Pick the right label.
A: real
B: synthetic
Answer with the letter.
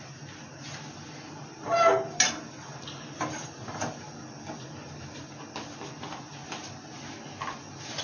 A